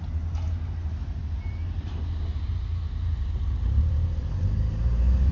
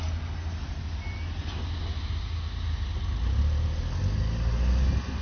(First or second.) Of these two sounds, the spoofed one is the first